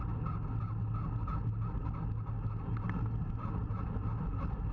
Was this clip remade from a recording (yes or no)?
no